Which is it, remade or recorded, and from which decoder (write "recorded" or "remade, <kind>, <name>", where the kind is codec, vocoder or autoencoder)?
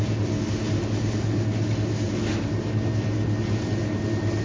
recorded